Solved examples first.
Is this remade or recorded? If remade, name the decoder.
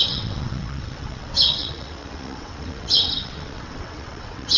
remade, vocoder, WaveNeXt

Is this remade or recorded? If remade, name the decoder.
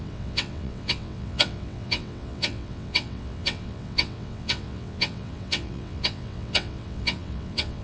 remade, vocoder, WaveNeXt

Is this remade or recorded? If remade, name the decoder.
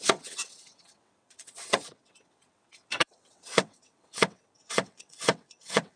remade, vocoder, WaveNeXt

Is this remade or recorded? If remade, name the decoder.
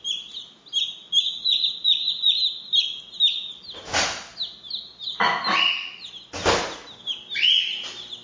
recorded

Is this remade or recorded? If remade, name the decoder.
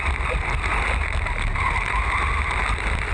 recorded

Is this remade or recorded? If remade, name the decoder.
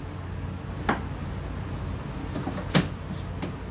recorded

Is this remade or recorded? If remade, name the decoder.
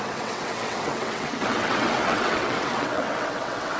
remade, vocoder, WaveNeXt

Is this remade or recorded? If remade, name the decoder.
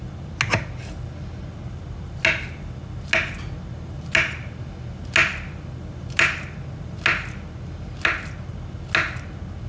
recorded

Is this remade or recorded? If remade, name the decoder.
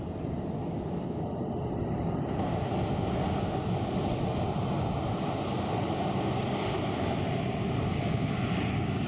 recorded